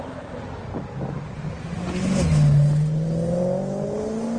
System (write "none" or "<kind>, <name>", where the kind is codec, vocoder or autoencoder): none